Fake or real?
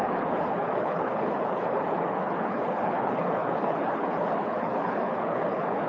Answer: fake